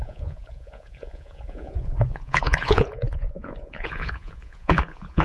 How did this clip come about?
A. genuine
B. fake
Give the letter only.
B